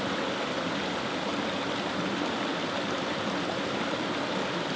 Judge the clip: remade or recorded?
recorded